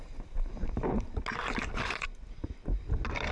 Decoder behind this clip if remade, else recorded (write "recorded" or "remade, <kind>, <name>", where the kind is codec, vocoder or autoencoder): recorded